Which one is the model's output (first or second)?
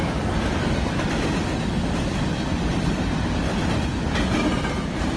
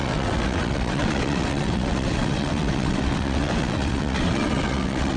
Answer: second